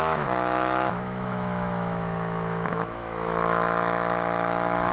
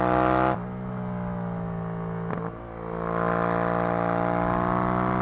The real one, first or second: second